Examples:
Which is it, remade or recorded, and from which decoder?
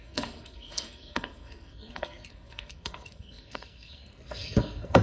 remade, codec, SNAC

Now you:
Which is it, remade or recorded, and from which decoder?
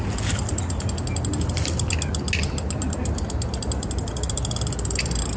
recorded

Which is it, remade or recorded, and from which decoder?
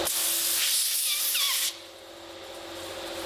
recorded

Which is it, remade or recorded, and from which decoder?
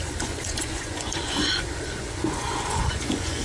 remade, vocoder, Vocos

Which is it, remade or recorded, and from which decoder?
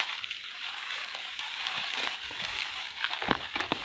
remade, codec, DAC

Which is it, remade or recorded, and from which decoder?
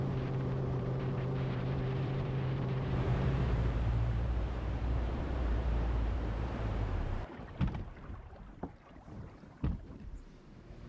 remade, vocoder, BigVGAN v2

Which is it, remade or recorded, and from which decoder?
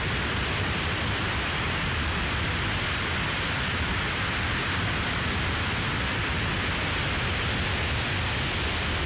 recorded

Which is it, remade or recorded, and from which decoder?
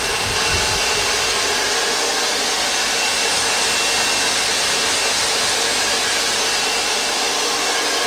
recorded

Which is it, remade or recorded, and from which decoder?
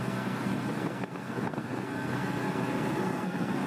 remade, codec, SNAC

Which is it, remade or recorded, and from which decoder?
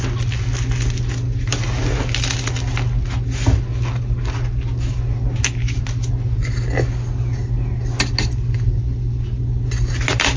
recorded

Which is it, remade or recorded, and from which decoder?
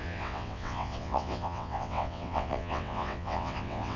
remade, vocoder, WaveNeXt